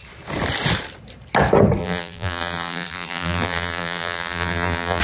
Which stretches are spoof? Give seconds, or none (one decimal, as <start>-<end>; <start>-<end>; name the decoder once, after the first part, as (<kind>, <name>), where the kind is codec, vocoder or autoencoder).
1.8-5.0 (vocoder, BigVGAN v2)